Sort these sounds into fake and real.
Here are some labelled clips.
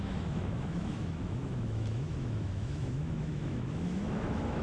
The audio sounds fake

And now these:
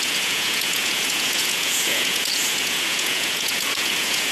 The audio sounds fake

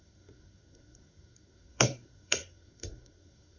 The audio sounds fake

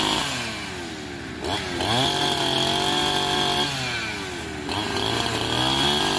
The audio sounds real